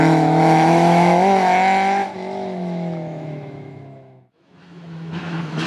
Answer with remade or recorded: remade